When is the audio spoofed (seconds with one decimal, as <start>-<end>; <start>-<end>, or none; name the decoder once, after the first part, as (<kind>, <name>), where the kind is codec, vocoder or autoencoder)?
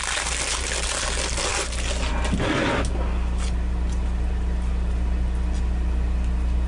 none